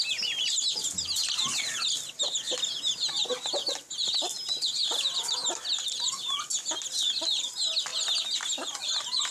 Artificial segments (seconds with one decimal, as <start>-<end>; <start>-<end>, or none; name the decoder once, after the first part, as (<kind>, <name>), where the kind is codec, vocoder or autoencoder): none